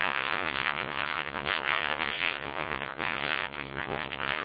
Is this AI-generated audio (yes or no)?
yes